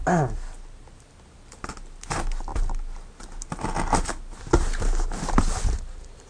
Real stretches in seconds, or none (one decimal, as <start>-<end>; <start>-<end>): 0.0-6.3